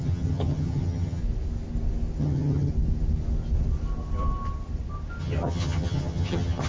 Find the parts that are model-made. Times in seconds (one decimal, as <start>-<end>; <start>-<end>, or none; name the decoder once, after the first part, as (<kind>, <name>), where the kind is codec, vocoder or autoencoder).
0.0-1.2 (vocoder, HiFi-GAN); 2.2-2.7; 5.2-6.7